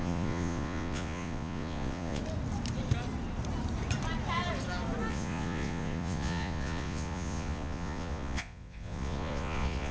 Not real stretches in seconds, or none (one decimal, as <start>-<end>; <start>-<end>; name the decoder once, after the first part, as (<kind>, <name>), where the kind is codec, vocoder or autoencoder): 0.0-2.2 (vocoder, Vocos); 5.1-9.9